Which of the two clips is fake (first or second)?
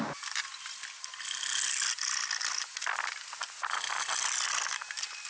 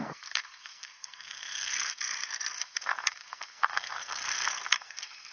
second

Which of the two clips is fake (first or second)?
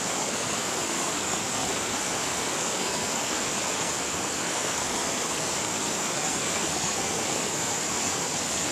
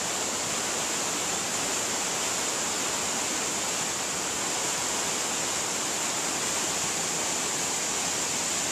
first